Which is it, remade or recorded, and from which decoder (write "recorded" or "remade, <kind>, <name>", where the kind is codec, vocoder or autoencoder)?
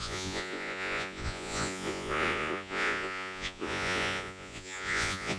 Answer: remade, vocoder, Vocos